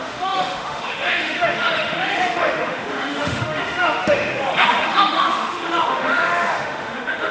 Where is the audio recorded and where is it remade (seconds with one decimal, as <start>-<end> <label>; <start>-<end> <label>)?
0.0-7.3 remade